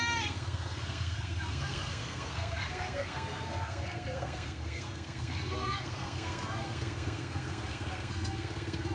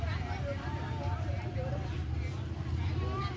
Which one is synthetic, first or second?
first